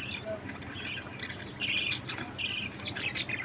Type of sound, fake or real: real